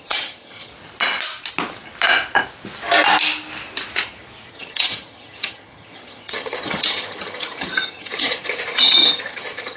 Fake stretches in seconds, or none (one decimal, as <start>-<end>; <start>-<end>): 0.0-0.7; 4.5-9.8